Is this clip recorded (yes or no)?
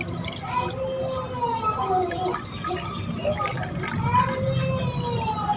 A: yes